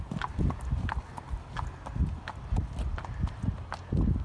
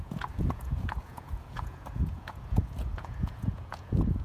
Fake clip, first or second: second